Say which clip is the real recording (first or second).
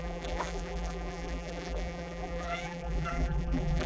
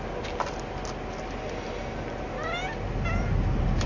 second